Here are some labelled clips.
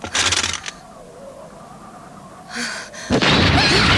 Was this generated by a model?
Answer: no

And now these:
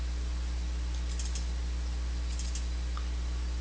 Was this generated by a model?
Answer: no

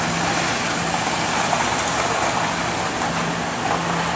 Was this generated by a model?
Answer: no